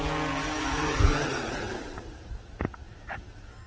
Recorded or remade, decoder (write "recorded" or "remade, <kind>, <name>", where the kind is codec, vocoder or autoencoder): recorded